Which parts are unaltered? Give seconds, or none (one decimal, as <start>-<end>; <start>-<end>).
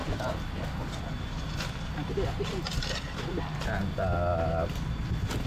3.8-4.8